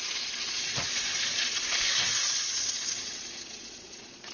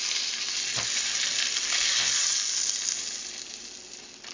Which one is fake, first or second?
first